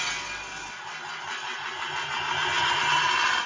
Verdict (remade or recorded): recorded